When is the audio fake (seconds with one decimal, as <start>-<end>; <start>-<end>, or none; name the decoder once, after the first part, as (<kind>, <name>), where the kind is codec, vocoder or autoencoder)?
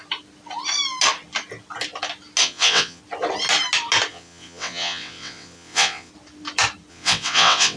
2.4-3.0 (vocoder, WaveNeXt); 4.1-6.1; 6.9-7.8